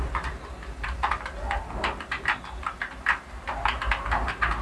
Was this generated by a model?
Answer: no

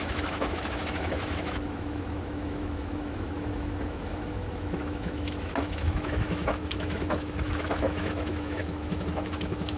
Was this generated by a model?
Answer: yes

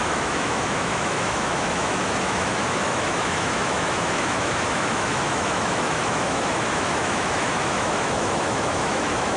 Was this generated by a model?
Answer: yes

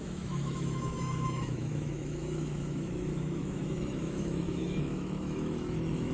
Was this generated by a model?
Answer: yes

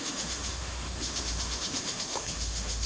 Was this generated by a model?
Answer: yes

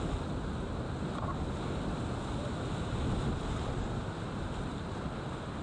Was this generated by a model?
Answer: no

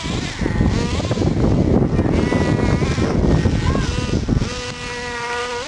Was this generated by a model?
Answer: no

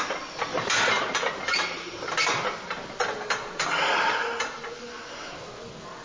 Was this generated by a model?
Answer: no